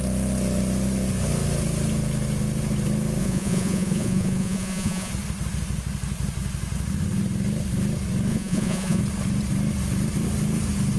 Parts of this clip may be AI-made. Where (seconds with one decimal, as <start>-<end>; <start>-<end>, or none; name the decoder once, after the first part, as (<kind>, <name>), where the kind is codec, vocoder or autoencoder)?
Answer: 3.2-5.1 (vocoder, Vocos); 8.3-9.0